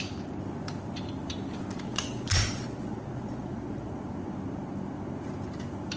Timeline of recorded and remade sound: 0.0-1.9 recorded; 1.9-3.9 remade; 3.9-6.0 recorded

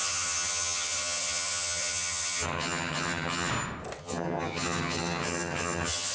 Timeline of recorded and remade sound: 0.0-3.5 remade; 3.5-4.0 recorded; 4.0-6.1 remade

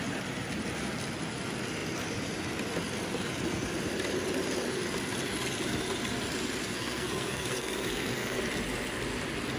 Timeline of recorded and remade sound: 0.0-6.6 recorded; 6.6-8.4 remade; 8.4-9.6 recorded

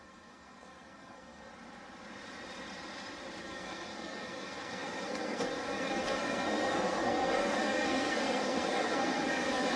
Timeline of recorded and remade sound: 0.0-1.5 remade; 1.5-3.4 recorded; 3.4-9.8 remade